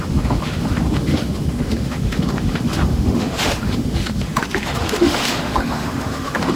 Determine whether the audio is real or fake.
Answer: fake